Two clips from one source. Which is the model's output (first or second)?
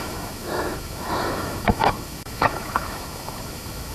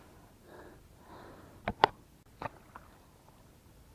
first